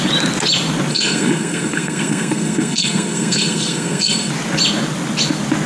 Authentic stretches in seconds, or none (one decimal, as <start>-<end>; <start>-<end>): 0.0-0.9; 4.3-5.7